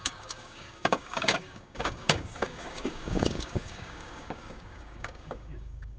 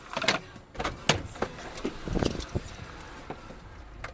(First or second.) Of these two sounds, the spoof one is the first